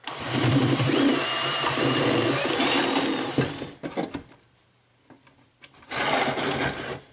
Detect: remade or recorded remade